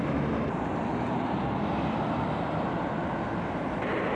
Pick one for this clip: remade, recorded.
recorded